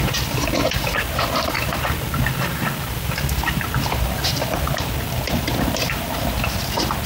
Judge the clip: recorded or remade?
remade